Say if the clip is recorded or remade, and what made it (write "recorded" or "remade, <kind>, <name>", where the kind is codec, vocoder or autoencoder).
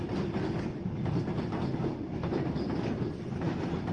recorded